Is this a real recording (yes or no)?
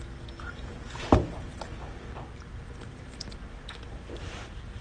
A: yes